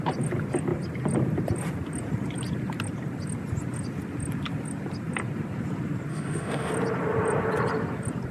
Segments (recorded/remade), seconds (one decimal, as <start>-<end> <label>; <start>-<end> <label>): 0.0-6.1 recorded; 6.1-6.7 remade; 6.7-8.3 recorded